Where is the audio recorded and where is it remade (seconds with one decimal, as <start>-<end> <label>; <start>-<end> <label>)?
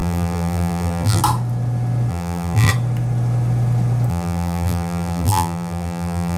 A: 0.0-1.2 remade; 1.2-2.1 recorded; 2.1-2.7 remade; 2.7-4.1 recorded; 4.1-6.4 remade